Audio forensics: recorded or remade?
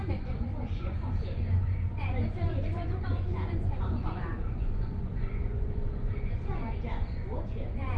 remade